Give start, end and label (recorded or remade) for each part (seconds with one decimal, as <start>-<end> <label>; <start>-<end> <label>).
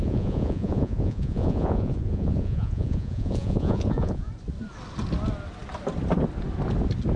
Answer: 0.0-4.3 remade; 4.3-7.2 recorded